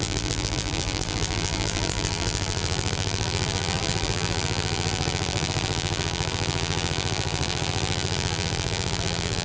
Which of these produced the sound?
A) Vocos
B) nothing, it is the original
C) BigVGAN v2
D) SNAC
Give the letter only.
C